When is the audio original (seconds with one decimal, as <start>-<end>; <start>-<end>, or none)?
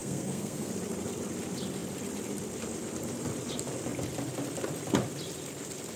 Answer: 0.7-6.0